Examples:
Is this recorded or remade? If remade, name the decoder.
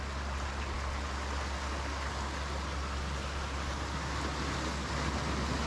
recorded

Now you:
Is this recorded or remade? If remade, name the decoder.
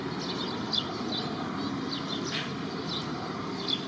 recorded